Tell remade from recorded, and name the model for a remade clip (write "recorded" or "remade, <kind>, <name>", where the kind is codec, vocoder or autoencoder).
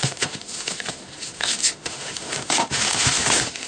remade, autoencoder, DAC-VAE